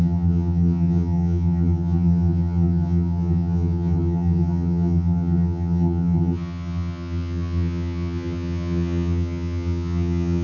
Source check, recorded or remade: remade